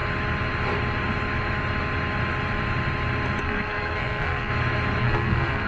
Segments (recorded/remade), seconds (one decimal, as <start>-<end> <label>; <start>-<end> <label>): 0.0-3.4 recorded; 3.4-4.5 remade; 4.5-5.0 recorded; 5.0-5.7 remade